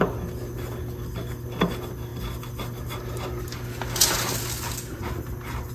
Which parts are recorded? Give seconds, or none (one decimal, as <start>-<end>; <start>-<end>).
0.0-5.7